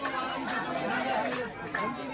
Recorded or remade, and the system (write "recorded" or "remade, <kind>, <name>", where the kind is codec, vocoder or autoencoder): recorded